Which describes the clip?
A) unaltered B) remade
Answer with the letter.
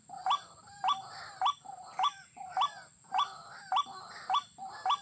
A